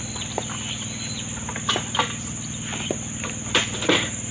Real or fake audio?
real